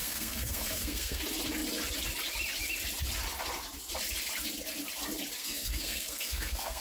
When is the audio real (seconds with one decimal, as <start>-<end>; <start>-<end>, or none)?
1.2-5.4